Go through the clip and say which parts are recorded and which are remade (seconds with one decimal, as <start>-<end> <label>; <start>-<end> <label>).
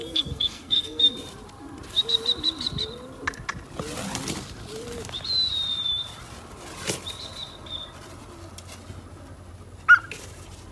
0.0-1.0 remade; 1.0-10.7 recorded